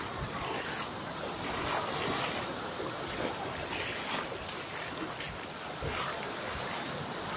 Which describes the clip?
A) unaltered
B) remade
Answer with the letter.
A